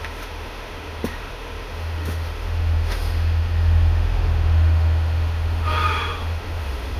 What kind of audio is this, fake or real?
fake